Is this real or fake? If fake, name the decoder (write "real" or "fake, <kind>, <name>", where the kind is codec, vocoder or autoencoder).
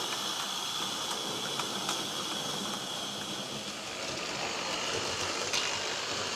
fake, vocoder, BigVGAN v2